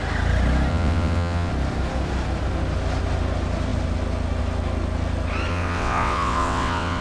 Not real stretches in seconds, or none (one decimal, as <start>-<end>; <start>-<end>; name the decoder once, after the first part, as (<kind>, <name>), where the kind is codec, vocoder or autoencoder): 0.7-1.5 (vocoder, WaveNeXt); 5.5-7.0